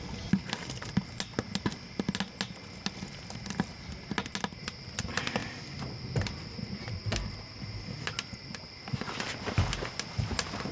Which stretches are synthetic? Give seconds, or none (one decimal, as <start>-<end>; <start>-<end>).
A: none